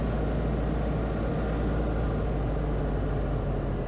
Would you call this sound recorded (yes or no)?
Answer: yes